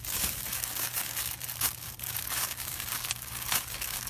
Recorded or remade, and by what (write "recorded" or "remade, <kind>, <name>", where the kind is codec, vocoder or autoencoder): remade, codec, DAC